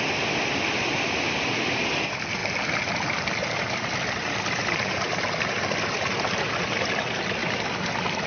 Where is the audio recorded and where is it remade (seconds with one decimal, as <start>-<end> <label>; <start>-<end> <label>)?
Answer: 0.0-8.3 recorded